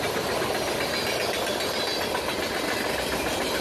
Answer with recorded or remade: recorded